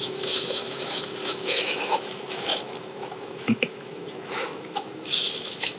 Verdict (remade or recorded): remade